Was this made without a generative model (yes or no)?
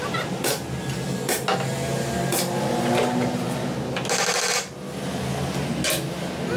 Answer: yes